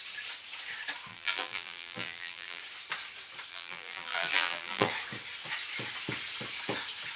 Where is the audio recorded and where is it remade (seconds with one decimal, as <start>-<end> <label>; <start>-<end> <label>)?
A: 0.0-1.1 recorded; 1.1-2.6 remade; 2.6-3.5 recorded; 3.5-4.9 remade; 4.9-7.2 recorded